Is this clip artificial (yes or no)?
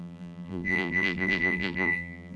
yes